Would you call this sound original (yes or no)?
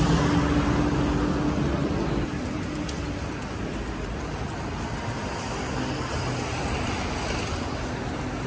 yes